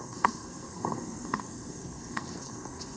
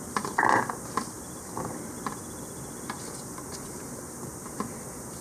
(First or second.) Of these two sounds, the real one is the second